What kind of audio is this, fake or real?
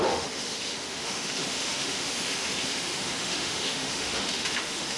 fake